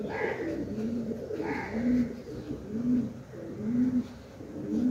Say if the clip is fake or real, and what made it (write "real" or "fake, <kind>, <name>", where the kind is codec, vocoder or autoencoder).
real